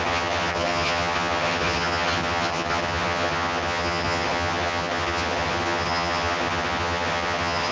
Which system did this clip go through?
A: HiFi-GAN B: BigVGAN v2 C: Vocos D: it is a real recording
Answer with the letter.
A